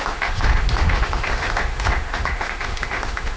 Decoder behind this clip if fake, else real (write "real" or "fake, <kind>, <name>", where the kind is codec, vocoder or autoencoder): fake, autoencoder, DAC-VAE